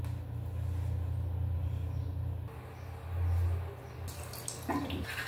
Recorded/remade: recorded